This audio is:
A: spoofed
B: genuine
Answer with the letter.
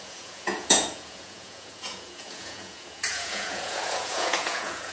A